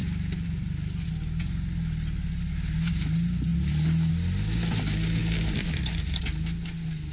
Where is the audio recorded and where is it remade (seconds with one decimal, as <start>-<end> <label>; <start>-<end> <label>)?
0.0-1.1 remade; 1.1-5.2 recorded; 5.2-6.2 remade; 6.2-7.1 recorded